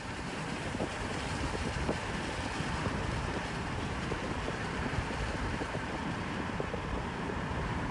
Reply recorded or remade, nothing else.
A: remade